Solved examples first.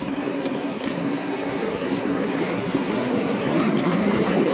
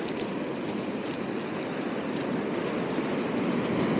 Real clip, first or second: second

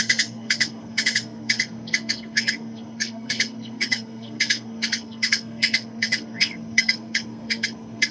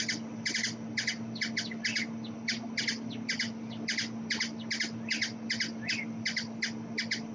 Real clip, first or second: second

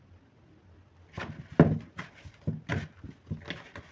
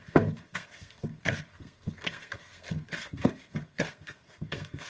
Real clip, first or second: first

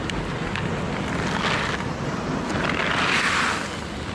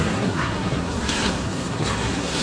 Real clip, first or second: first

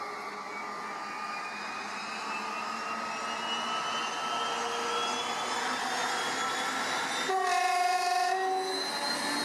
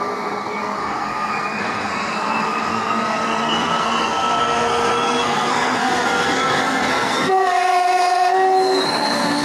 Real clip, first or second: first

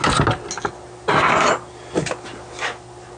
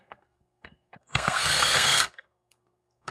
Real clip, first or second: first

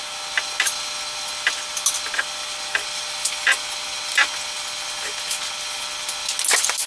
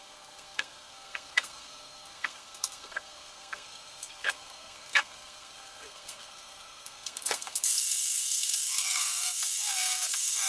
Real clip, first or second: first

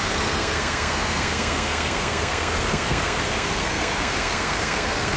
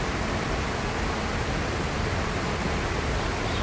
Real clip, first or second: second